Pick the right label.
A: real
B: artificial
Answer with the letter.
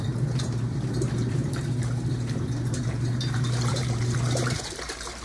B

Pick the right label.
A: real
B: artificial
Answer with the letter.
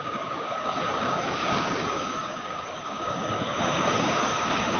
B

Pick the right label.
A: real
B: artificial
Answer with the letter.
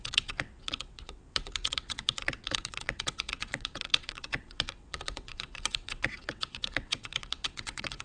B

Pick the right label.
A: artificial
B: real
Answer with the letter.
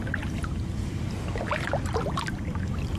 B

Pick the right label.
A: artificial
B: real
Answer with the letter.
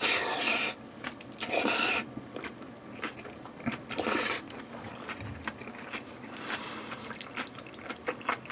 A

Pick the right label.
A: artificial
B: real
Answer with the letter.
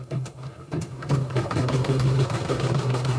A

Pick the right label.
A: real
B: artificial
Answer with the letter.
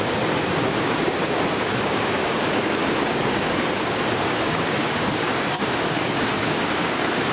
B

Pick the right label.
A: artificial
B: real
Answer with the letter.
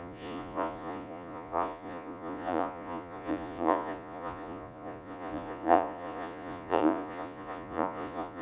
A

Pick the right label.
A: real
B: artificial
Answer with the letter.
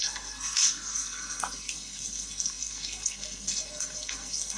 B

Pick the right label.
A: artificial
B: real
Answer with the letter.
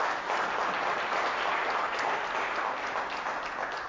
B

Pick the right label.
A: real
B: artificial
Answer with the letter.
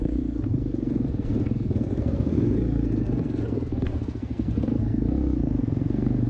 B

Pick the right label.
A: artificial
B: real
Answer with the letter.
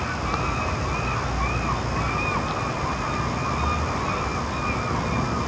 B